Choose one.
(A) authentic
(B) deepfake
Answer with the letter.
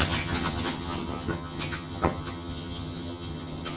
B